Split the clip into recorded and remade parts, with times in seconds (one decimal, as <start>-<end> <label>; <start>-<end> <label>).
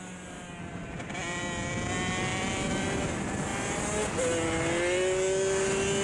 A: 0.0-0.8 recorded; 0.8-1.4 remade; 1.4-2.3 recorded; 2.3-3.1 remade; 3.1-6.0 recorded